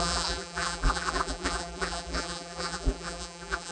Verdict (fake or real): fake